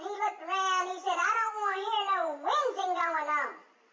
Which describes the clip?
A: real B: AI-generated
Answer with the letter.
A